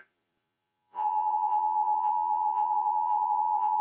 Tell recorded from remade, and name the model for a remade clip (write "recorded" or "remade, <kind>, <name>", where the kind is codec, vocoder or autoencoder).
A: remade, vocoder, Vocos